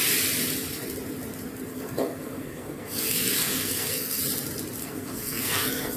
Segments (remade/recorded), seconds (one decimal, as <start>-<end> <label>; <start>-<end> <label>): 0.0-1.7 recorded; 1.7-4.2 remade; 4.2-4.8 recorded; 4.8-6.0 remade